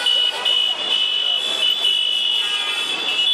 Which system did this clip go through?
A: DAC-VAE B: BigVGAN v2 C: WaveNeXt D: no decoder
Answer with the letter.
D